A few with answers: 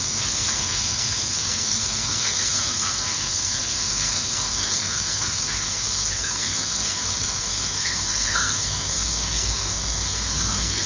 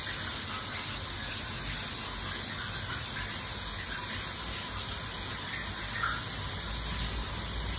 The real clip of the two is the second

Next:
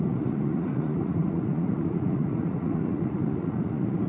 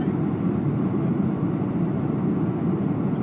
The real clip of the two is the second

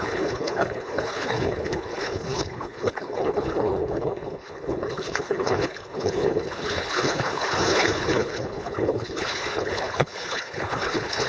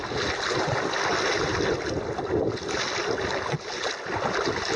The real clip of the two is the second